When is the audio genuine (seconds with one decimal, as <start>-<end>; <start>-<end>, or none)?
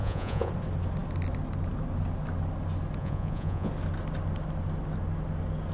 0.5-3.0; 3.7-5.7